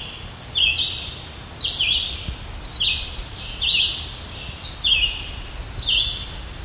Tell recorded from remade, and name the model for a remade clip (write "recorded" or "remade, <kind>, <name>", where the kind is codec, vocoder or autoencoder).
recorded